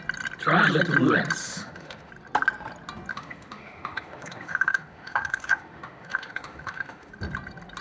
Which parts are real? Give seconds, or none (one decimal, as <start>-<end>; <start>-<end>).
0.0-1.4; 2.1-3.1; 7.1-7.8